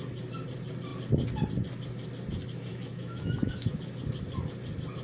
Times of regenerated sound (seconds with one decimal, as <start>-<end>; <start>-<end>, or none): 2.7-3.8